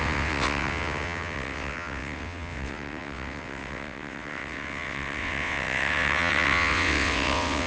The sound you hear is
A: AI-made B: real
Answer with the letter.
A